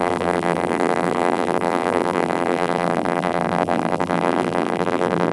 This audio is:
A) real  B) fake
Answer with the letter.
B